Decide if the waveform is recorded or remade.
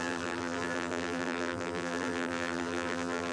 remade